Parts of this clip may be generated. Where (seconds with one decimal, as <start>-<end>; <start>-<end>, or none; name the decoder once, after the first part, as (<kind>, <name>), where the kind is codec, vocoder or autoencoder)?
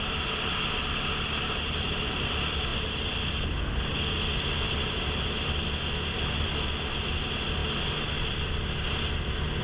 none